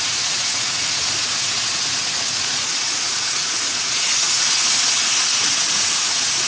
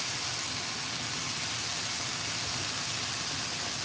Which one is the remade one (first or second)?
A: first